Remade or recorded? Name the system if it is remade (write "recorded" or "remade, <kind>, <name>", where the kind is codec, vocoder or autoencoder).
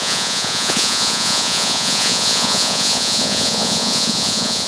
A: remade, vocoder, Vocos